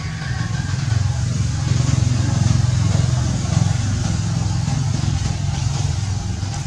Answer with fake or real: real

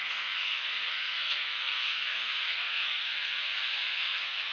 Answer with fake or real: fake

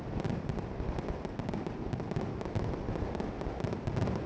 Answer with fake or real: real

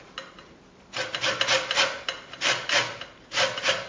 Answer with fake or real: real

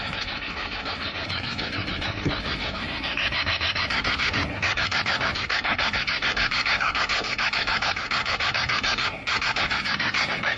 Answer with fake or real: fake